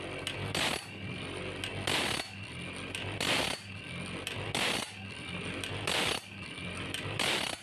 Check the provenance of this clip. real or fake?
real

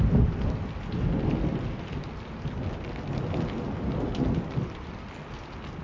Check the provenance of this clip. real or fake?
real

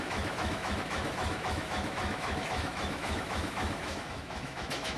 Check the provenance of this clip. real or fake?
fake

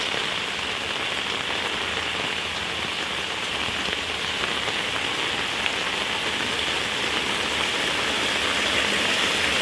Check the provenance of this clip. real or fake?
real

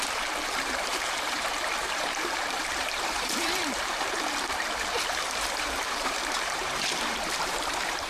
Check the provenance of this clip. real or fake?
fake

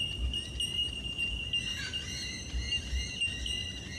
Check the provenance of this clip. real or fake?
real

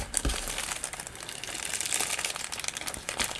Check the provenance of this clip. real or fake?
real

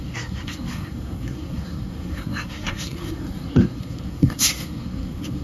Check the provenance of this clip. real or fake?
fake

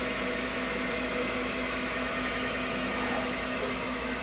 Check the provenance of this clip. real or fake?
fake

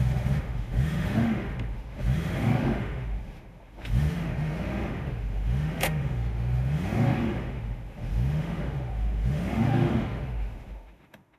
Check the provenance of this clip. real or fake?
fake